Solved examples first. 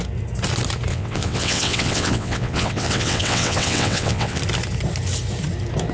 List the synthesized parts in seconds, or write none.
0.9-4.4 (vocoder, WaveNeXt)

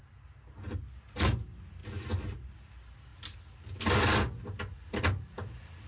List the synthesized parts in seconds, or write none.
none

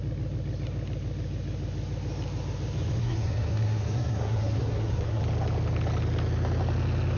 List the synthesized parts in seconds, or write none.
3.0-5.2 (codec, SNAC)

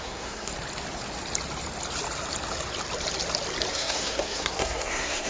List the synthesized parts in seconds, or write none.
0.0-0.5 (codec, SNAC); 3.7-5.3